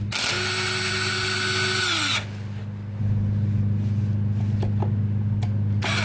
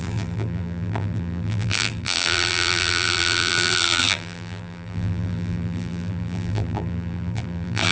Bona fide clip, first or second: first